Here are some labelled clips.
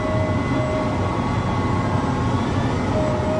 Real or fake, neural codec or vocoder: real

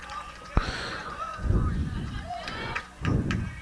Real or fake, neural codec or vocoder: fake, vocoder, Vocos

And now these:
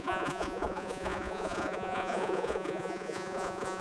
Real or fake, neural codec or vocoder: fake, vocoder, Vocos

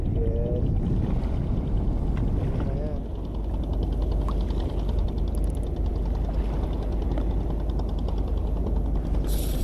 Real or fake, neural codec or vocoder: real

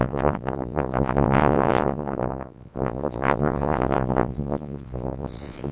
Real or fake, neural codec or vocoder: fake, vocoder, Vocos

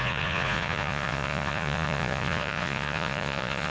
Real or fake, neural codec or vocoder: fake, vocoder, Vocos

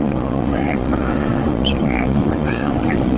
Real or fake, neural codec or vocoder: fake, vocoder, Vocos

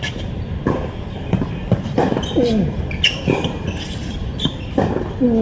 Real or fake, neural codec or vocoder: real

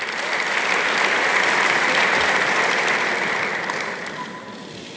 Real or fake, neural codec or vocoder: real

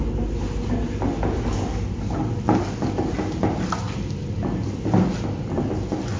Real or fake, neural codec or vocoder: real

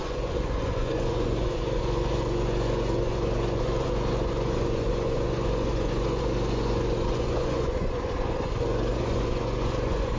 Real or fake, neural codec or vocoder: fake, vocoder, Vocos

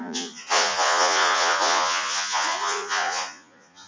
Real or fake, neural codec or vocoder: fake, vocoder, Vocos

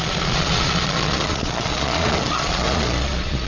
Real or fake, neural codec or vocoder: fake, vocoder, Vocos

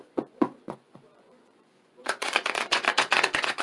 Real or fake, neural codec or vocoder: fake, vocoder, Vocos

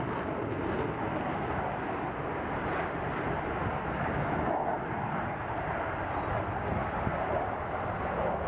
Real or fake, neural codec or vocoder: real